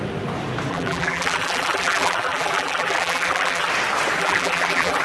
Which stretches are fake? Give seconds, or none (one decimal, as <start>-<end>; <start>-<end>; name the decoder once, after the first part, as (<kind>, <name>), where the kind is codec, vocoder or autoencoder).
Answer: 0.7-3.7 (vocoder, BigVGAN v2); 4.2-5.0

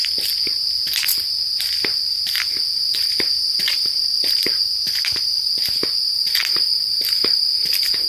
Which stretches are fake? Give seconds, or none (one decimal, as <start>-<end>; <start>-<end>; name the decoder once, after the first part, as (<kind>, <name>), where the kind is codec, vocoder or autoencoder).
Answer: none